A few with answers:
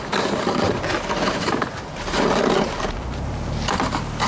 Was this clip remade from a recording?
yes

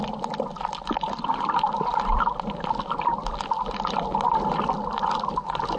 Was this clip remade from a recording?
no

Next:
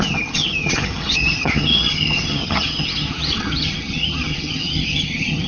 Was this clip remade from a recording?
yes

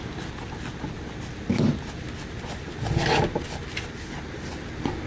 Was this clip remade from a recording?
no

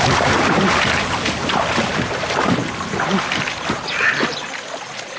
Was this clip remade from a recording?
no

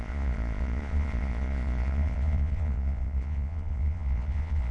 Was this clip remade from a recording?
yes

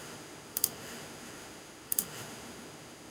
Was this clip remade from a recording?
yes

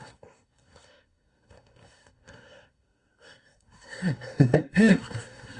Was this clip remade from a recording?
yes